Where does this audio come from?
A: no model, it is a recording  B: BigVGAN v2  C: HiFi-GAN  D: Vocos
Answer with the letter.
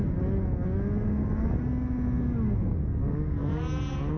A